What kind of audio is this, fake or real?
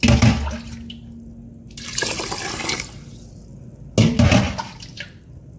real